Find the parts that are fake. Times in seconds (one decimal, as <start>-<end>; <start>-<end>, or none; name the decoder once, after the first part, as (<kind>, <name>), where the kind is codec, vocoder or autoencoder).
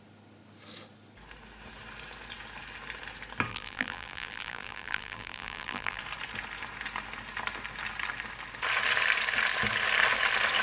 3.5-6.0 (vocoder, BigVGAN v2)